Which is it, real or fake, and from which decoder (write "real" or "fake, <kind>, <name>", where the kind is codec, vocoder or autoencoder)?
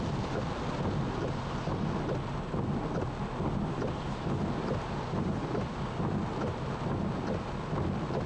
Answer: real